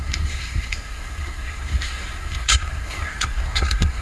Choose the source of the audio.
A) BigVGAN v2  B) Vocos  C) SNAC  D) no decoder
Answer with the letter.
C